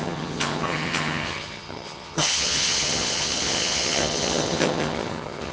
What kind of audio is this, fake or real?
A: fake